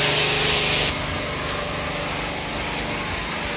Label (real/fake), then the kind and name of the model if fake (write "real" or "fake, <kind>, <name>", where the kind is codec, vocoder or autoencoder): real